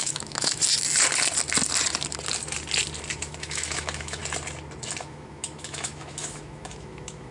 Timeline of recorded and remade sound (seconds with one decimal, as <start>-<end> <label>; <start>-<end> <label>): 0.0-0.6 remade; 0.6-3.2 recorded; 3.2-4.2 remade; 4.2-5.0 recorded; 5.0-7.3 remade